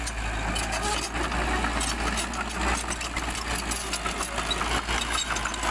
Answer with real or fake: real